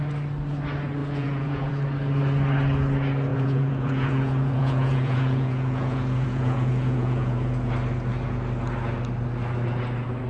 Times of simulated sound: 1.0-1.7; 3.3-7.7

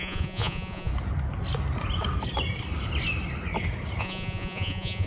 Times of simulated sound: 0.0-0.9; 4.0-5.1

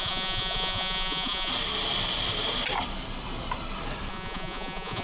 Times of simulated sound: 0.0-1.5; 4.1-5.0

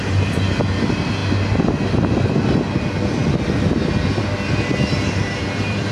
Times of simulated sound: none

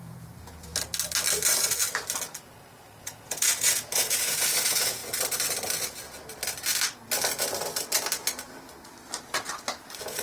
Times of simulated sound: 0.0-0.7; 3.0-5.0